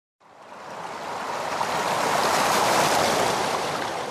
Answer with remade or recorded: recorded